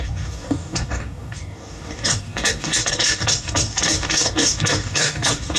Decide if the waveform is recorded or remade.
remade